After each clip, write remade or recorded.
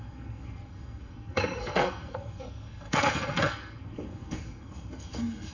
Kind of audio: remade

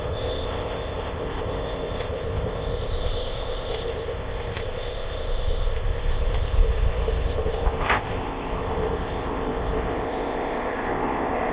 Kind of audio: remade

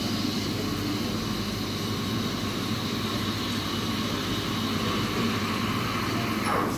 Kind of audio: recorded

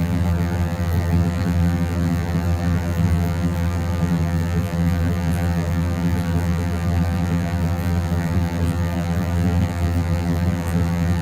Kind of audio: remade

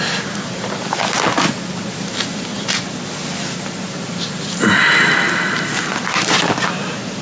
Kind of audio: recorded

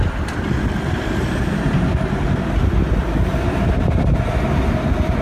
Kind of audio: recorded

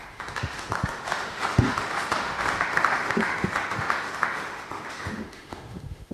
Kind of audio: remade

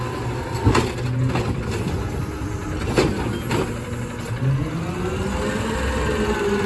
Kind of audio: recorded